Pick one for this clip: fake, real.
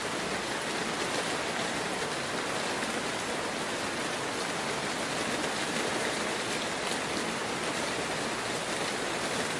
real